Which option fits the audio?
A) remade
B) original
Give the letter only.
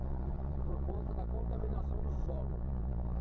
A